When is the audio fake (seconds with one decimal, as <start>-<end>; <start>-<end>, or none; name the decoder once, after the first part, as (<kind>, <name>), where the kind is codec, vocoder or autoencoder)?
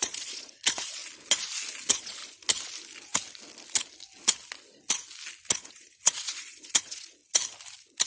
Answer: 0.0-1.0 (vocoder, Vocos); 1.8-2.2; 5.7-7.2